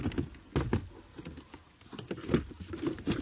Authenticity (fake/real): real